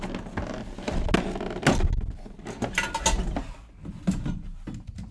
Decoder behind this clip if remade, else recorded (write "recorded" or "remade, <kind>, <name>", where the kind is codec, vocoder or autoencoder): recorded